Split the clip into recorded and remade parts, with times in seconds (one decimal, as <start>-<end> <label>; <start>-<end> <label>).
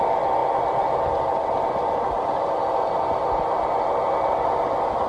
0.0-5.1 recorded